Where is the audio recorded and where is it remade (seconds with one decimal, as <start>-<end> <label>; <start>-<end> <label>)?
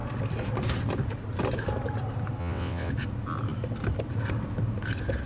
0.0-2.4 recorded; 2.4-2.9 remade; 2.9-5.3 recorded